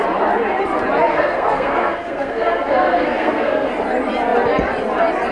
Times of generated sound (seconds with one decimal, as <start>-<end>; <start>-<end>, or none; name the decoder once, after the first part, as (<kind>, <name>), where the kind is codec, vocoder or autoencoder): 1.1-3.7 (codec, SNAC)